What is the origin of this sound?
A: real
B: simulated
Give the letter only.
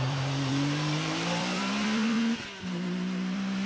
B